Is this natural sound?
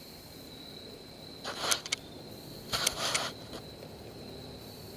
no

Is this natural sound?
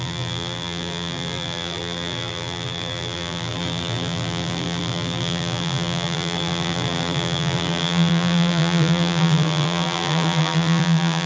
no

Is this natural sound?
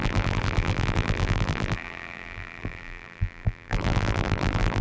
no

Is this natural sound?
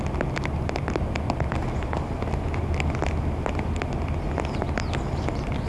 yes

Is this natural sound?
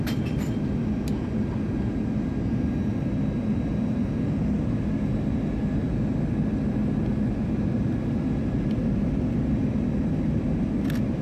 yes